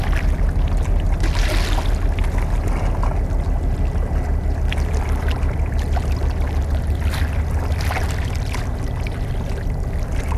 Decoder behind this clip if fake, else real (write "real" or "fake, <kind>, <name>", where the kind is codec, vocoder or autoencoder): real